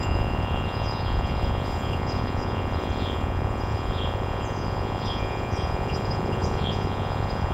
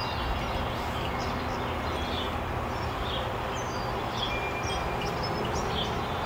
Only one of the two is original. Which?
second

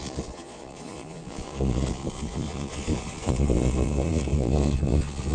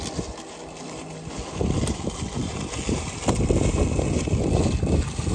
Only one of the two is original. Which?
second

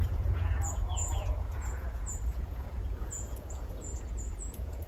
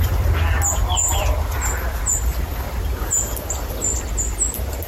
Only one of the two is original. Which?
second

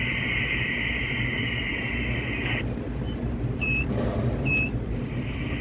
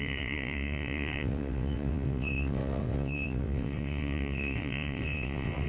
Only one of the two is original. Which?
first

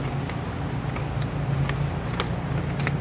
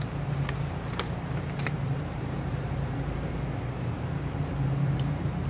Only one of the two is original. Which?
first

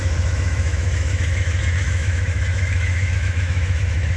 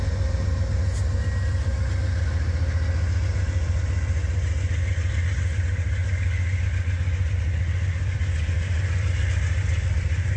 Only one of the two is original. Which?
second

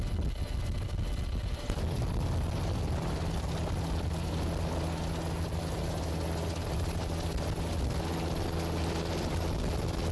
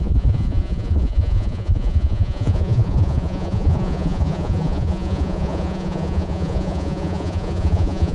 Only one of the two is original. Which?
first